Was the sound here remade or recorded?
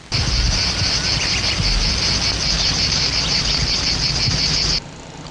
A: recorded